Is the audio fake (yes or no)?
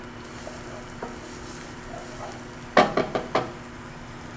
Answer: no